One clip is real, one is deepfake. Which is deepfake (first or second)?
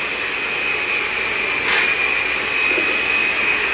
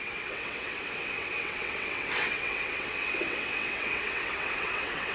second